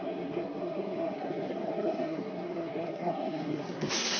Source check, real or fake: fake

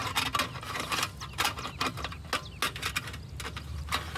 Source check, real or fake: real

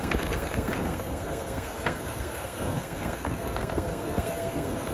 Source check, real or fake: fake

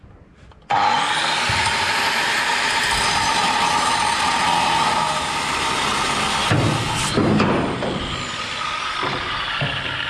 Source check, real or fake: real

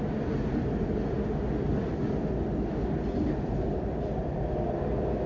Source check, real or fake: real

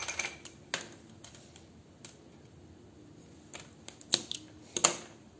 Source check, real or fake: real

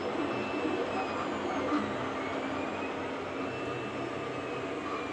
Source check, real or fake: real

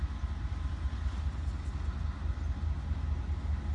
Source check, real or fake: real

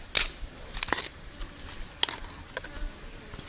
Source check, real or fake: real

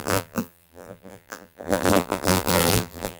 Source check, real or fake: fake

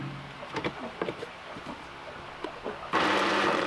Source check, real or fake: real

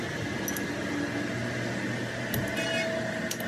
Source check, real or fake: real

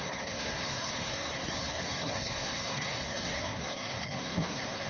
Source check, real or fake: fake